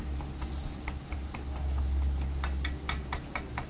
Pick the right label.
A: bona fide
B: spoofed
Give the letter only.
A